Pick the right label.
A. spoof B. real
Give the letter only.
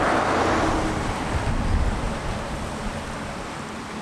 B